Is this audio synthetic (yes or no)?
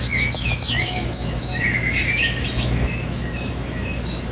yes